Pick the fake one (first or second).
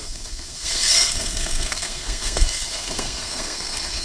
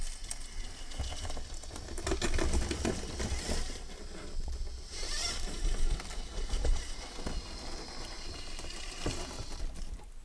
first